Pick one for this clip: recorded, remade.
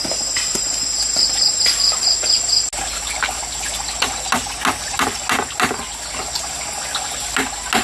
recorded